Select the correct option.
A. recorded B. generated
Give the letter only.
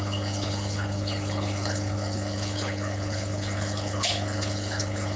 B